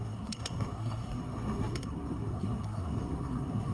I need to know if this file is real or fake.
fake